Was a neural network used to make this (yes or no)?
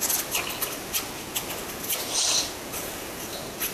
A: no